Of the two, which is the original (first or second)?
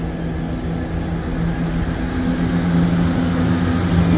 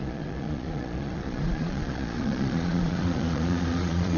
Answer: first